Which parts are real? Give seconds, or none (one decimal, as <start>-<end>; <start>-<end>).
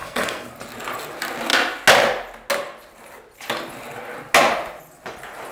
0.5-5.5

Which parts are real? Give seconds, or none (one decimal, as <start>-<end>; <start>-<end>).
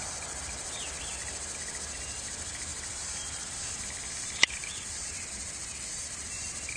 1.1-2.7